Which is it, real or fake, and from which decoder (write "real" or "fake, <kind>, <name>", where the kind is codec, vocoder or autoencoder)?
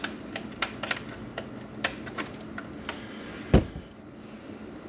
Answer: real